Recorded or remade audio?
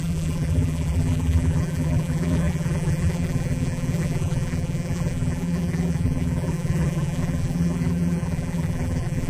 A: remade